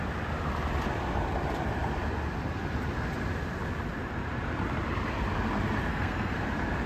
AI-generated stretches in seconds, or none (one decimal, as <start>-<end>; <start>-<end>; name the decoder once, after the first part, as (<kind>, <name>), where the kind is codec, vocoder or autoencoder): 5.9-6.4 (codec, SNAC)